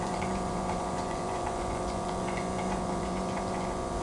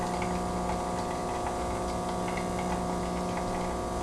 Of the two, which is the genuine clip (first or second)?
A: second